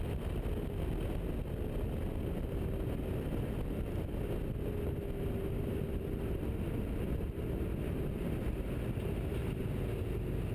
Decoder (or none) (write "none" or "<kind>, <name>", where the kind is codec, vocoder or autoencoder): none